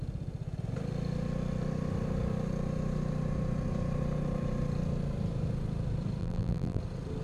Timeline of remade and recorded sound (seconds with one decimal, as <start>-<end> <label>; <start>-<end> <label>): 0.0-6.2 recorded; 6.2-6.8 remade; 6.8-7.2 recorded